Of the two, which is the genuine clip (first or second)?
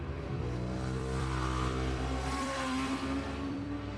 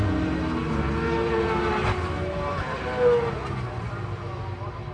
second